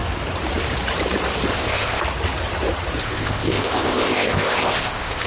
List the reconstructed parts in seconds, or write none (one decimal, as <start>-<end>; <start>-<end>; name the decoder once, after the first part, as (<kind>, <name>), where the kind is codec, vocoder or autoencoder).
1.5-2.0 (codec, ZipCodec); 3.0-5.3